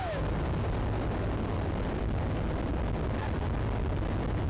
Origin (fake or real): real